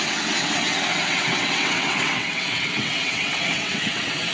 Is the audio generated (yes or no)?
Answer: yes